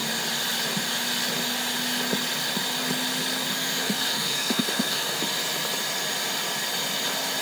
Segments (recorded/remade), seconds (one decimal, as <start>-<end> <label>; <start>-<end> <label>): 0.0-3.5 recorded; 3.5-5.2 remade; 5.2-7.4 recorded